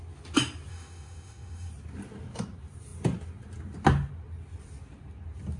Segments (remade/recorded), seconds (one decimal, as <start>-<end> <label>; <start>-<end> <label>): 0.0-0.7 recorded; 0.7-1.7 remade; 1.7-5.6 recorded